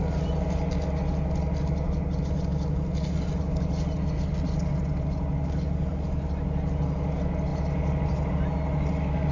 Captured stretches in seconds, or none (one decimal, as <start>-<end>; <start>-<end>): 0.0-9.3

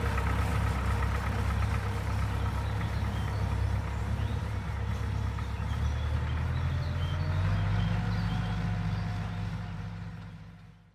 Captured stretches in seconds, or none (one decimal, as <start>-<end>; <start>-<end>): 0.0-10.9

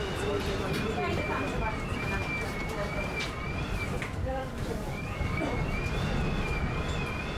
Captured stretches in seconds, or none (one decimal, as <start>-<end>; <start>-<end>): 0.0-4.2; 5.4-7.4

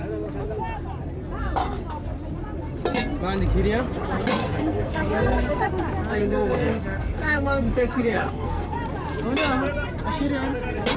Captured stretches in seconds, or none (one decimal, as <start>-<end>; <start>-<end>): 0.0-4.4; 5.6-6.2; 8.8-11.0